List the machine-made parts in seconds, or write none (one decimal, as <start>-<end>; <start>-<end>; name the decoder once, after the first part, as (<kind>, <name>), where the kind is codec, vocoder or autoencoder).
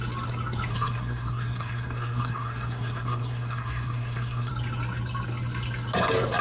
0.7-4.5 (codec, SNAC)